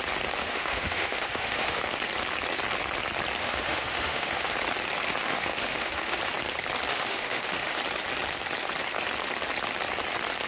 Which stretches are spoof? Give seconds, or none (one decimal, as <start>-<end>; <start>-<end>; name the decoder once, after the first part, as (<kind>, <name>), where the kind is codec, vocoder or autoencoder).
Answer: 0.4-1.8 (autoencoder, DAC-VAE); 3.4-4.5; 5.2-6.2; 6.9-7.8